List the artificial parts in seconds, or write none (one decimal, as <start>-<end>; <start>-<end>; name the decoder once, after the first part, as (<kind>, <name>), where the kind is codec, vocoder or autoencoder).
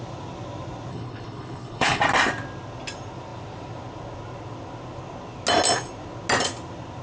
0.9-2.0 (codec, HILCodec)